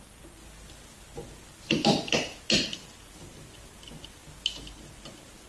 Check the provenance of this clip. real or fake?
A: real